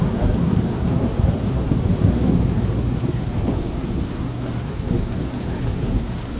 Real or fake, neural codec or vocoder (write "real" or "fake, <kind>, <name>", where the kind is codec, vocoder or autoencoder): fake, codec, SNAC